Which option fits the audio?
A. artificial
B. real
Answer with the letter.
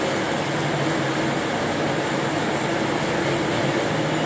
B